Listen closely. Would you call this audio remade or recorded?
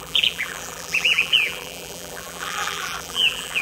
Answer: remade